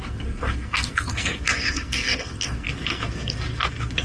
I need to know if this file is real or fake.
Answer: fake